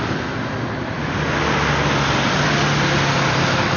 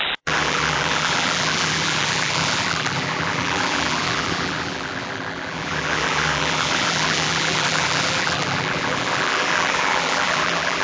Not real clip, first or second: second